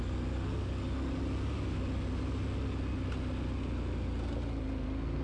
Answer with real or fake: real